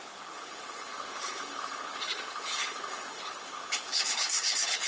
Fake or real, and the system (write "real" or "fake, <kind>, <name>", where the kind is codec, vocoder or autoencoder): fake, codec, HILCodec